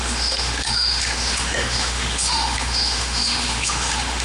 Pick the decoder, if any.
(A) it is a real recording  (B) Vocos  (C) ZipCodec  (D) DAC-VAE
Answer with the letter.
D